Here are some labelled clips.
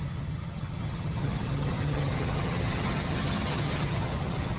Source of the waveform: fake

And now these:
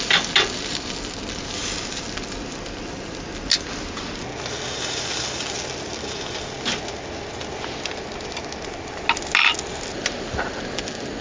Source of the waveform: real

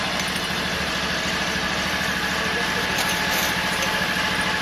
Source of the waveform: real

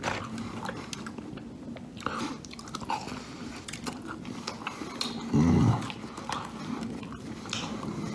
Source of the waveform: real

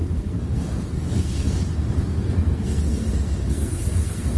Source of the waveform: fake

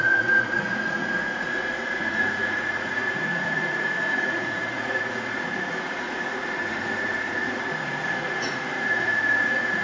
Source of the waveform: fake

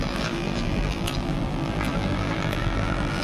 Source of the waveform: fake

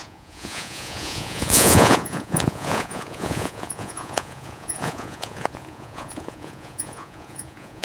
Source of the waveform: fake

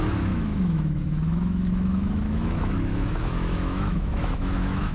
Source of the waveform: fake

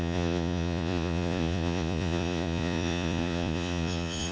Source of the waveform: fake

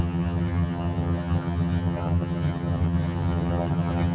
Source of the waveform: fake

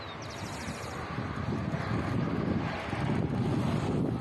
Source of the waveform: real